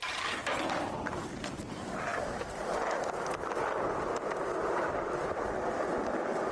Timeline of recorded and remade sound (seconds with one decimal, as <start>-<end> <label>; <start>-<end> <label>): 0.0-6.5 recorded